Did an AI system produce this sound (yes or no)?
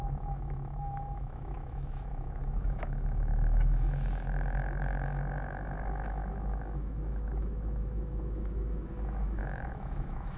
yes